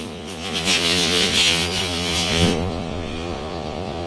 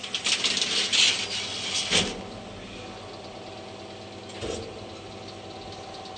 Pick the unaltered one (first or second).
second